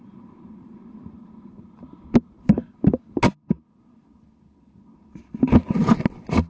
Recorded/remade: recorded